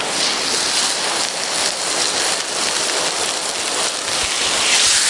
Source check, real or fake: real